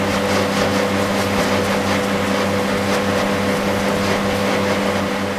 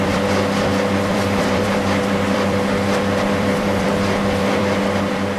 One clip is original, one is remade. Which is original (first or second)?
first